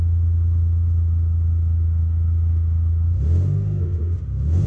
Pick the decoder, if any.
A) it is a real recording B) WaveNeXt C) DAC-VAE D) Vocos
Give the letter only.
C